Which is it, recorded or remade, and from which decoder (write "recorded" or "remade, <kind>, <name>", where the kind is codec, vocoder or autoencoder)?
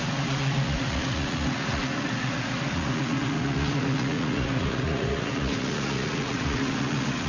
remade, vocoder, Vocos